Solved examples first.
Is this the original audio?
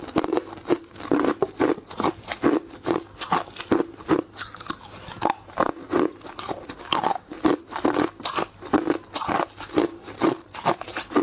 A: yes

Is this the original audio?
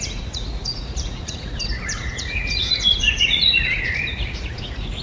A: no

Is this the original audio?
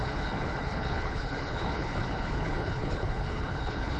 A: no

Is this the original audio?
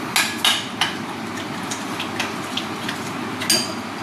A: yes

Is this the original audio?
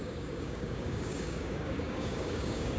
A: no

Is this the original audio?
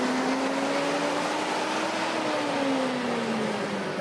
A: yes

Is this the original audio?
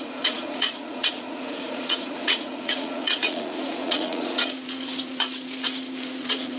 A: no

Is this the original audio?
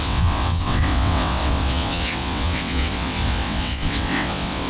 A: no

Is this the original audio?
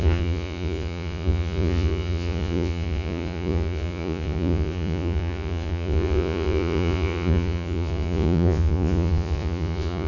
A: no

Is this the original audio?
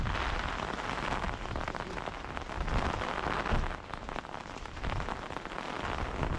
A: yes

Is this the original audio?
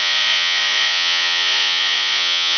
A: no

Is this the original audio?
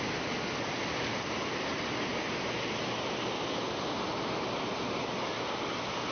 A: yes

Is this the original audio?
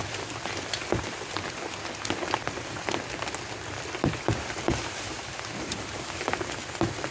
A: yes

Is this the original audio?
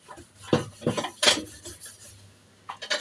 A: yes